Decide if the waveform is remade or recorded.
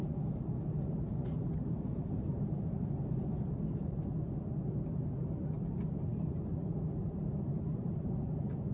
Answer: recorded